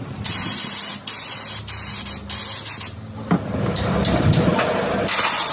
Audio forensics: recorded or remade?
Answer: recorded